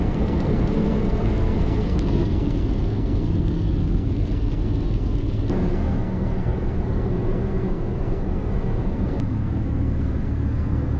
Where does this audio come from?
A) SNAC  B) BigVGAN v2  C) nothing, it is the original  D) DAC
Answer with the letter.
A